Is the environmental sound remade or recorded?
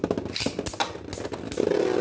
recorded